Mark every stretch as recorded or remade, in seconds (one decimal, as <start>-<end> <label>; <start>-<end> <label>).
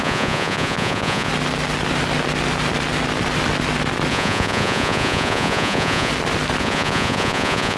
0.0-1.3 remade; 1.3-4.1 recorded; 4.1-6.1 remade; 6.1-6.6 recorded; 6.6-7.8 remade